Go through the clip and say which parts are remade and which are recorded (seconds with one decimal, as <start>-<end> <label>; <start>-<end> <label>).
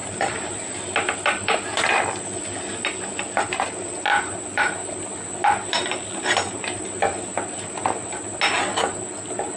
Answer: 0.0-9.6 recorded